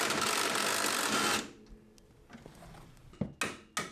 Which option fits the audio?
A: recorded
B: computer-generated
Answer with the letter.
A